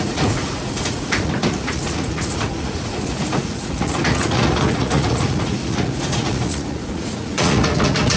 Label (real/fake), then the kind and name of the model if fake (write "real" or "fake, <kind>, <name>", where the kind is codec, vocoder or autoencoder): fake, vocoder, Vocos